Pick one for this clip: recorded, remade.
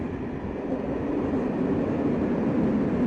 recorded